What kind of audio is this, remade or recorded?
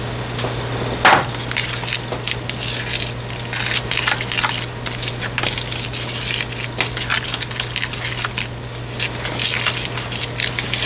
recorded